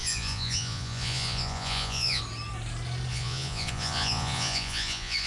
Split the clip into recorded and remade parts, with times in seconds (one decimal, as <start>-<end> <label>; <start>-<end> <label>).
0.0-2.2 remade; 2.2-3.1 recorded; 3.1-5.3 remade